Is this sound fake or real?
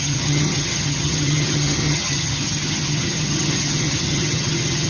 fake